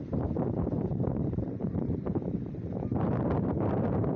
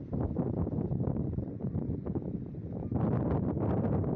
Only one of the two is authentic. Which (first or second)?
second